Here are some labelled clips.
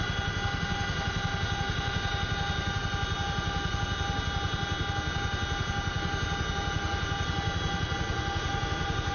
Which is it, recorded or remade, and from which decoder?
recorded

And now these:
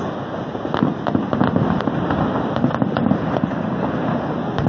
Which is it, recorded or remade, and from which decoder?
recorded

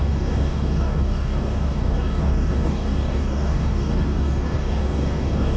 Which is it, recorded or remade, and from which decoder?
remade, codec, DAC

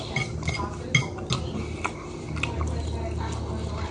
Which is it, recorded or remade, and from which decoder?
recorded